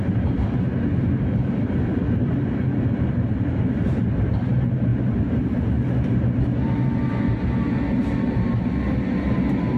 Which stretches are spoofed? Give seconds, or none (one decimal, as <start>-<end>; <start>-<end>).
none